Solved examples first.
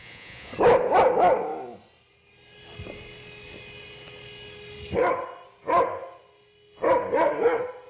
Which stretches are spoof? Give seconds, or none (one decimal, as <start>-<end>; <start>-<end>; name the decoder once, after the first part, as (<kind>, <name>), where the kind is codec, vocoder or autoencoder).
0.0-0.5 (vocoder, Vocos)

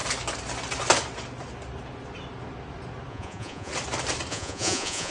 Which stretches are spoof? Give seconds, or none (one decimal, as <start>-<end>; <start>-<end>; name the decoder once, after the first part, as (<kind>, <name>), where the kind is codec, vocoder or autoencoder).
3.1-3.7 (vocoder, Vocos); 4.3-5.1

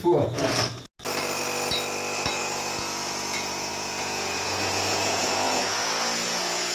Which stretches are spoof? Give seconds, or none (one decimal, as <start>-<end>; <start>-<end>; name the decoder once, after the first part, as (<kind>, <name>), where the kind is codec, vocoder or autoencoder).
0.0-0.4 (vocoder, Vocos); 2.4-6.7

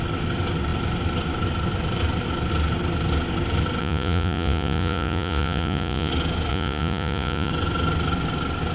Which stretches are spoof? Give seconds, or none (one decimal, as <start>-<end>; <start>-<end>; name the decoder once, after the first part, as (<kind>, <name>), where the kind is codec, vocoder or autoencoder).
3.8-6.1 (vocoder, Vocos); 6.5-7.5

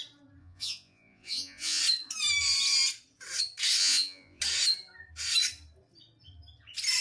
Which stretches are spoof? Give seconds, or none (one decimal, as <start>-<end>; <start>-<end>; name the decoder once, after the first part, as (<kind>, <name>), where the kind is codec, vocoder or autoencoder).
0.4-1.8 (vocoder, Vocos); 3.8-4.4